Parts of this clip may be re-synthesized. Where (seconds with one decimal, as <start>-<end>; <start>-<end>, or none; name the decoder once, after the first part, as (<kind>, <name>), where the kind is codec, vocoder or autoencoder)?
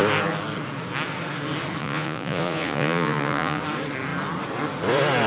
1.8-3.6 (vocoder, Vocos)